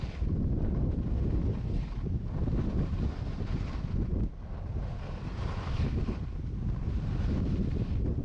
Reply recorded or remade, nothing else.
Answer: recorded